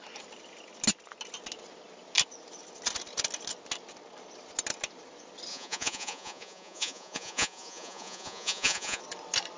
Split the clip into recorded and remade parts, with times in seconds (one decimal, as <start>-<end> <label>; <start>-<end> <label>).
0.0-5.5 recorded; 5.5-9.0 remade; 9.0-9.6 recorded